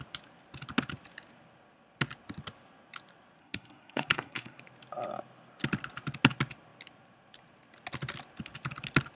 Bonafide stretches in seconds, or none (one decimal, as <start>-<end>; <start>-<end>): 0.0-3.4; 4.6-9.2

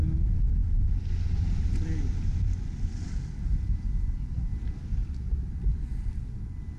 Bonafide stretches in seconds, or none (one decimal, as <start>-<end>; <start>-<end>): 0.0-6.8

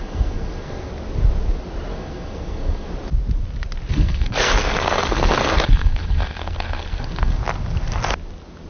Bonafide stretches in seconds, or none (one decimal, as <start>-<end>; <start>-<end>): 0.9-1.9; 2.9-3.9; 7.4-8.7

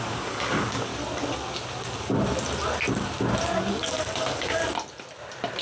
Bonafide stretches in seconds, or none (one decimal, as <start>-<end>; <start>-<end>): 0.9-3.7; 4.6-5.6

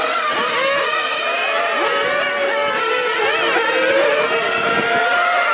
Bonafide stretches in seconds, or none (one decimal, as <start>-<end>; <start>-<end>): 0.0-5.5

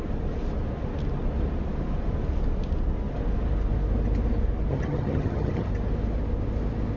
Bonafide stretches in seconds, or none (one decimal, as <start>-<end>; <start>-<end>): 0.0-4.7; 5.7-7.0

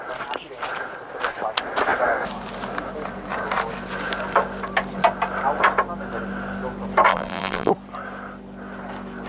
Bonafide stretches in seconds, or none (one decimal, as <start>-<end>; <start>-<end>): 0.0-7.1; 7.7-9.3

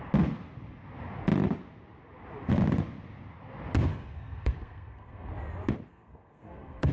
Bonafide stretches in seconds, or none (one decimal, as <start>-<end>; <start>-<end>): 0.0-3.9; 5.3-5.9